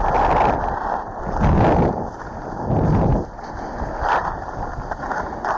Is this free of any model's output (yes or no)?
yes